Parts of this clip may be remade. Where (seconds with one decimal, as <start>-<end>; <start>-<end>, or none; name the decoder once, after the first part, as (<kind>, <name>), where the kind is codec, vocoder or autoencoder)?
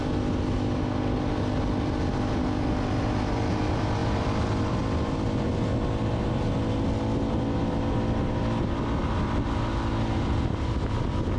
4.0-5.1 (vocoder, BigVGAN v2)